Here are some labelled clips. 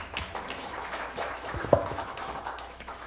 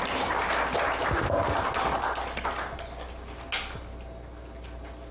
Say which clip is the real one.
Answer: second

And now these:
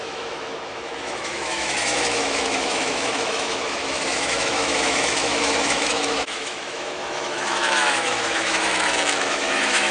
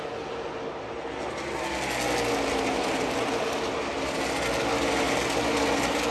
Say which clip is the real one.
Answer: second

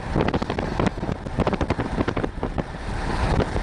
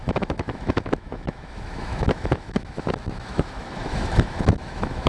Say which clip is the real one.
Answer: first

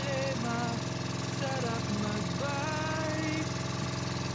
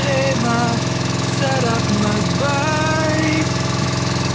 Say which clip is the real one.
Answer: first